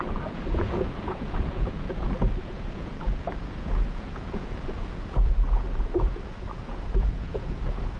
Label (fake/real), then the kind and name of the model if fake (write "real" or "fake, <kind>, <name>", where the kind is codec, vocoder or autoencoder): fake, vocoder, Vocos